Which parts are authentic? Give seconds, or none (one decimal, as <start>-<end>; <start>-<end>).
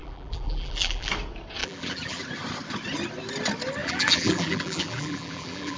1.1-1.6; 2.2-3.8